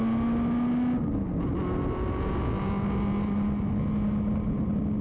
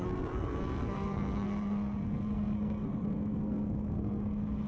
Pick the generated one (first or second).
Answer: second